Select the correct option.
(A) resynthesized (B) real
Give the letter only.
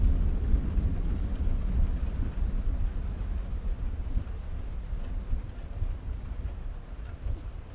B